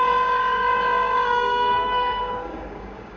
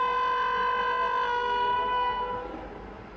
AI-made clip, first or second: first